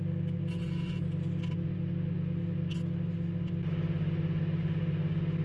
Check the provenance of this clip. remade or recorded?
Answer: recorded